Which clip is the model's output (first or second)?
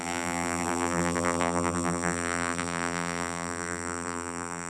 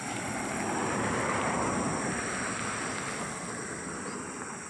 first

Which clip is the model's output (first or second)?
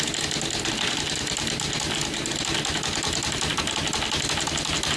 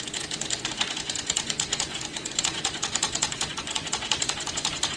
second